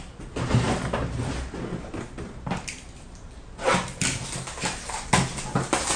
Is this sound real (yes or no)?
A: yes